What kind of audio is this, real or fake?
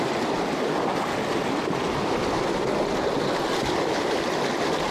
real